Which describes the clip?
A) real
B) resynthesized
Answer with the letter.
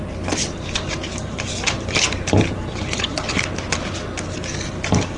A